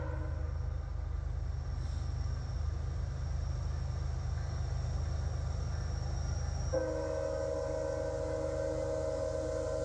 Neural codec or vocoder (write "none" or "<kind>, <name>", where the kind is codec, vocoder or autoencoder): none